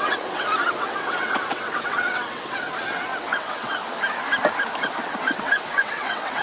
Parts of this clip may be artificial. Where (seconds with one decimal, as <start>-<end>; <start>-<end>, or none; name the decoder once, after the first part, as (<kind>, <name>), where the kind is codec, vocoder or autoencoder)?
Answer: 0.0-2.7 (vocoder, WaveNeXt); 3.2-3.8; 4.8-6.4